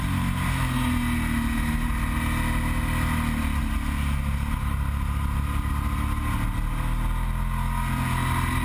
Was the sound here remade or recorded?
recorded